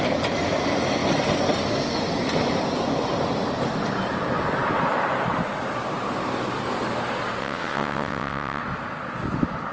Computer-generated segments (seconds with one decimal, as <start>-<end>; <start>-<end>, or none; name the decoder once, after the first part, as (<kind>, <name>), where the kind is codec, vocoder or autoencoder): 7.4-8.6 (vocoder, WaveNeXt)